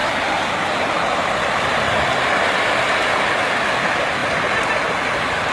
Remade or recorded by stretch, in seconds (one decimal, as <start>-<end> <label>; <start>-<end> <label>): 0.0-3.3 remade; 3.3-5.5 recorded